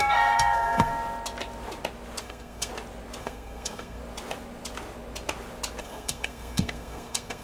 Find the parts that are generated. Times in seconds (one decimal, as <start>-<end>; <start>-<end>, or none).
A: 0.0-0.9; 2.2-2.7; 3.2-4.0; 5.8-7.4